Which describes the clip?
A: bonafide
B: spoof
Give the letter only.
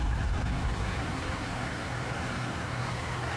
B